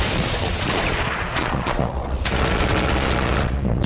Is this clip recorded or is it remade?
remade